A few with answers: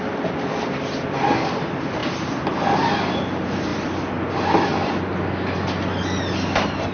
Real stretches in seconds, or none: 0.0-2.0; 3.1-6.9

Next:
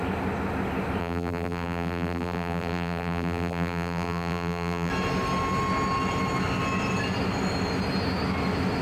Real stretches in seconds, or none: 0.0-1.0; 4.9-8.8

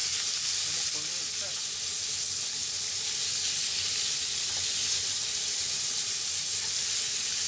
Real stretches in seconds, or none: 1.3-5.2; 6.8-7.5